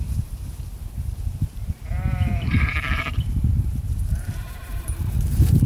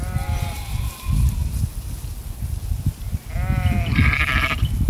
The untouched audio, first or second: second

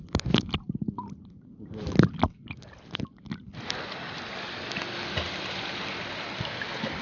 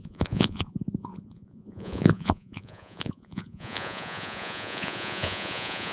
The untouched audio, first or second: first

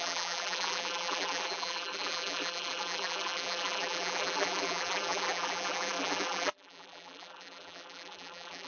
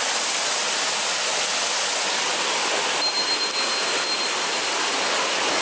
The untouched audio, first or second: second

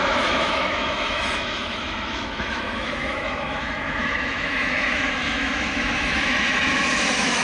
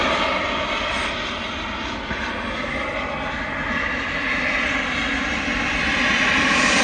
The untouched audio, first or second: second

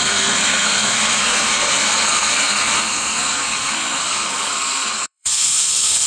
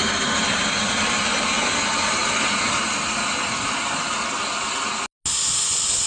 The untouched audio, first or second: second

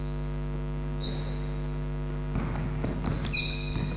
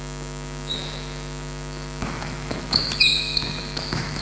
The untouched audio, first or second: first